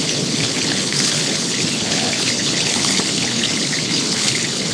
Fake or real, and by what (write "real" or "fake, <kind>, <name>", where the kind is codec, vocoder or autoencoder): fake, codec, HILCodec